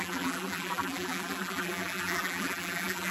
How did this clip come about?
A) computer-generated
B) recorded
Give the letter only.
A